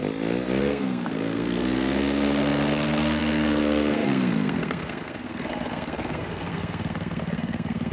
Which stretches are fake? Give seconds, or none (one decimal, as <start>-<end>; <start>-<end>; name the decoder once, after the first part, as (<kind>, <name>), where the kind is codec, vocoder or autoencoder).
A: 0.6-7.9 (codec, SNAC)